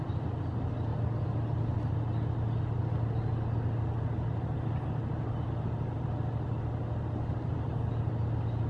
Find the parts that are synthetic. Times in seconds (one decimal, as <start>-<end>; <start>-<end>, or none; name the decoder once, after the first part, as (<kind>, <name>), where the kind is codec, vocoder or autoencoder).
none